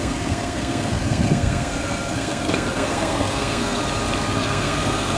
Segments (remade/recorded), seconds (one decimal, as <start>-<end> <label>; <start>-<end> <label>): 0.0-3.8 remade; 3.8-4.3 recorded; 4.3-5.2 remade